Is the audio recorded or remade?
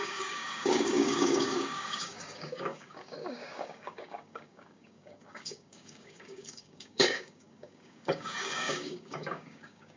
remade